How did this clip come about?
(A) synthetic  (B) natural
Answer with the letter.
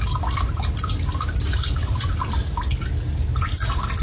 B